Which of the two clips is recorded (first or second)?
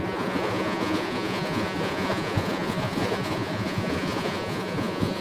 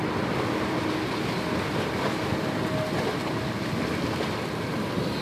second